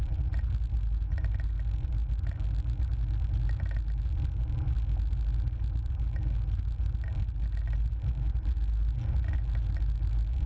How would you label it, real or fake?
real